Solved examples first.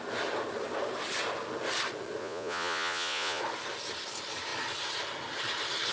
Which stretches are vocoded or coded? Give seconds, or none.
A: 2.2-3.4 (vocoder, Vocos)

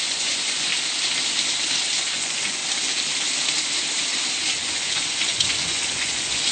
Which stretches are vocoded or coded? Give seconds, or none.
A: 0.0-0.7 (vocoder, Vocos); 2.0-2.6; 4.4-6.5

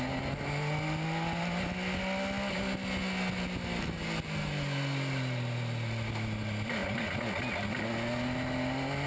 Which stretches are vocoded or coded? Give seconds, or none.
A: none

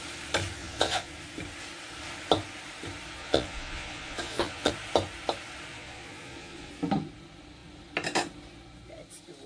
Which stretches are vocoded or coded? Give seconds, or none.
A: 0.6-1.1 (vocoder, Vocos); 3.2-4.7; 5.7-6.7

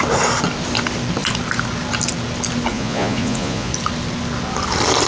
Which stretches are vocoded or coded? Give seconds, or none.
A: 2.7-3.7 (vocoder, Vocos)

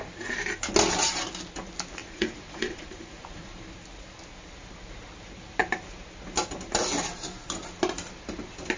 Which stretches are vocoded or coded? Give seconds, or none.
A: 2.0-3.5 (vocoder, Vocos)